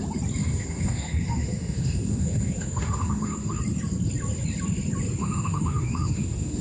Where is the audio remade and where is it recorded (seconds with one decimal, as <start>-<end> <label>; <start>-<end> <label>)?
0.0-0.4 recorded; 0.4-3.6 remade; 3.6-5.2 recorded; 5.2-6.6 remade